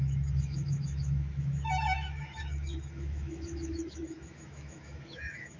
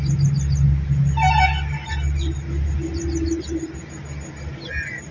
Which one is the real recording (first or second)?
second